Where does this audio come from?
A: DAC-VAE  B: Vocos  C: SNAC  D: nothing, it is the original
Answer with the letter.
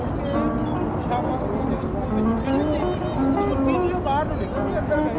D